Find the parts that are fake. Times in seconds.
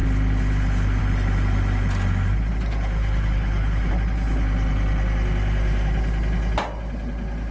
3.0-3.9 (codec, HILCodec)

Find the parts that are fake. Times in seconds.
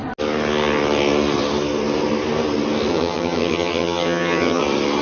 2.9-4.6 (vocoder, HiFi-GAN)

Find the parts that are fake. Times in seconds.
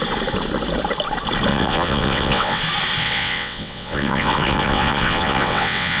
1.5-2.6 (vocoder, WaveNeXt); 3.0-6.0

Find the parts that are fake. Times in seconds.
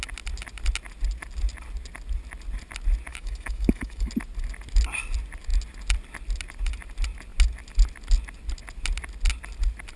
3.1-4.1 (autoencoder, DAC-VAE)